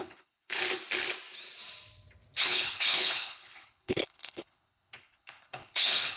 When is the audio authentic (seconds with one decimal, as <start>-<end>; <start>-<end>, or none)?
0.6-2.4